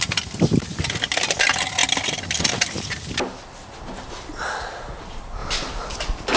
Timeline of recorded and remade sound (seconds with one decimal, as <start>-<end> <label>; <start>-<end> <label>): 0.0-6.4 recorded